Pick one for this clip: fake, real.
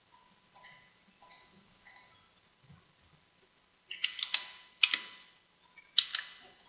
real